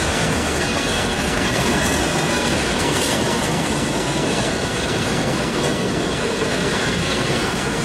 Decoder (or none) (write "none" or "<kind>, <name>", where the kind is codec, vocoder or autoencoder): codec, SNAC